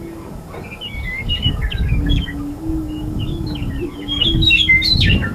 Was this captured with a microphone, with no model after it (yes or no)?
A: no